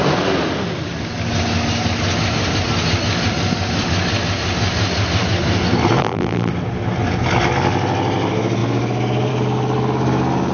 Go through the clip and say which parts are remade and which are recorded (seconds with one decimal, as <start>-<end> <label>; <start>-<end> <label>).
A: 0.0-6.0 recorded; 6.0-6.5 remade; 6.5-10.5 recorded